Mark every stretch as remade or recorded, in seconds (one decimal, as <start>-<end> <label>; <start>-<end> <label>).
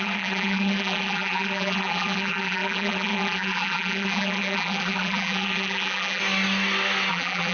0.0-6.2 remade; 6.2-7.1 recorded; 7.1-7.5 remade